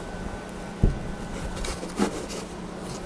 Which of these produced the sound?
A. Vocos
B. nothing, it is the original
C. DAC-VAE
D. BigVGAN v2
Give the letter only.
B